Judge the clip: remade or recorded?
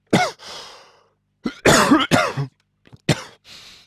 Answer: recorded